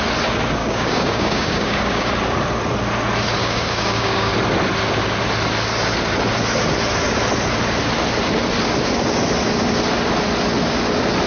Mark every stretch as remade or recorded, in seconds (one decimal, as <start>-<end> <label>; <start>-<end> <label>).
0.0-0.6 recorded; 0.6-2.1 remade; 2.1-3.4 recorded; 3.4-4.3 remade; 4.3-11.3 recorded